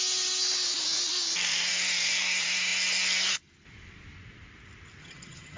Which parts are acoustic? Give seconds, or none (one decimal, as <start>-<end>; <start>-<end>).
0.0-5.0